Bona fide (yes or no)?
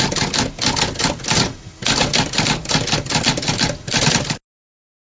yes